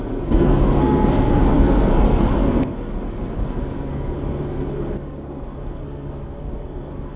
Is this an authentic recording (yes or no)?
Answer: no